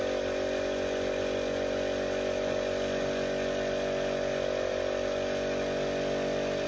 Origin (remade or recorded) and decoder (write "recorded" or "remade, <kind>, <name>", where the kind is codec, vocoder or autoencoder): recorded